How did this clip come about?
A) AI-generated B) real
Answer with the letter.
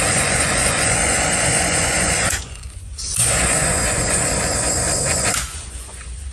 A